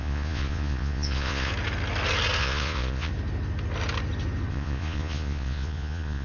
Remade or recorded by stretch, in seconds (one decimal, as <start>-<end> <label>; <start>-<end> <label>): 0.0-1.5 remade; 1.5-2.4 recorded; 2.4-3.1 remade; 3.1-4.5 recorded; 4.5-6.2 remade